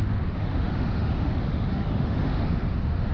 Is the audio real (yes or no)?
no